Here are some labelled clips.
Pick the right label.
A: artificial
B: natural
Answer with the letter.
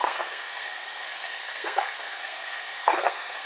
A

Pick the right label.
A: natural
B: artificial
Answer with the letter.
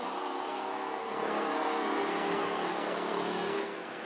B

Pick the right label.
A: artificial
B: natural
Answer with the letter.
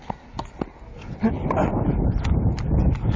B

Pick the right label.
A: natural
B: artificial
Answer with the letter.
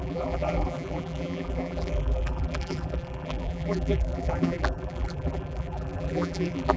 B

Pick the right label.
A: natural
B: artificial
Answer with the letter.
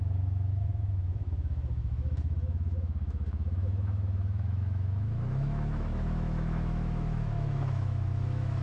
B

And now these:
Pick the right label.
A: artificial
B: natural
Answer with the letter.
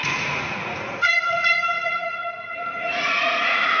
A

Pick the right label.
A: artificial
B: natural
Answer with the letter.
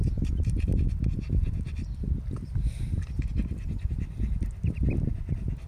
B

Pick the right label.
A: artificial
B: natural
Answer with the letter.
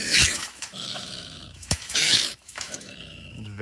A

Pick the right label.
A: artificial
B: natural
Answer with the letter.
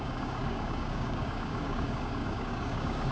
A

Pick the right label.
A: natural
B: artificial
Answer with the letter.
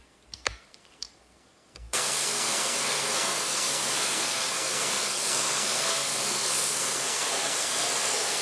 B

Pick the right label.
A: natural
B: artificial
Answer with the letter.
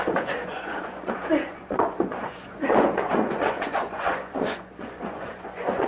B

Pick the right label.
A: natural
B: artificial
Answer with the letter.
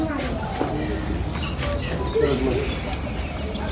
A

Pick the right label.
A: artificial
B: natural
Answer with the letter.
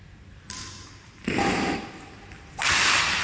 B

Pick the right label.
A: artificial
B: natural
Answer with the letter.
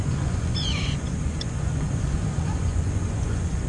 A